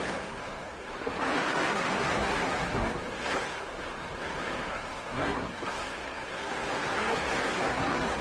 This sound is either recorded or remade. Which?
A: remade